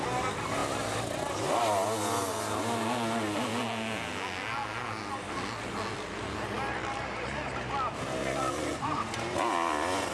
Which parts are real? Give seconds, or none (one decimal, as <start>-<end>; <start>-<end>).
0.0-8.2; 8.8-10.1